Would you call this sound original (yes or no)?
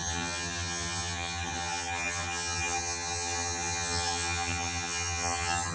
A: no